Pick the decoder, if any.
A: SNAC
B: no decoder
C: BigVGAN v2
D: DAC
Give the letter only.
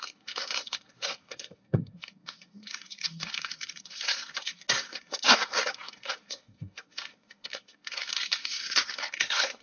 A